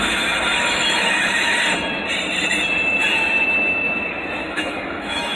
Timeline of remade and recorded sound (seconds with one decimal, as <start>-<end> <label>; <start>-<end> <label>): 0.0-0.5 recorded; 0.5-1.6 remade; 1.6-4.4 recorded; 4.4-5.4 remade